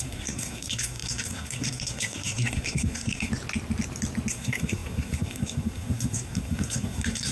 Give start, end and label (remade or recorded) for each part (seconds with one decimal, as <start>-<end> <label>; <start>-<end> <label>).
0.0-3.3 remade; 3.3-4.3 recorded; 4.3-7.3 remade